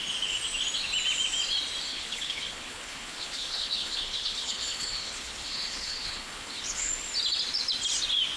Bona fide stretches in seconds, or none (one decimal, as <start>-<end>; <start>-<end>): 0.0-1.9; 6.9-8.4